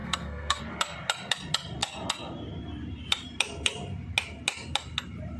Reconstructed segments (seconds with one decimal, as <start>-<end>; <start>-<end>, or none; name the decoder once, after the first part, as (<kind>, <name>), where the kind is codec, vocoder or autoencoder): 0.0-0.6 (codec, SNAC)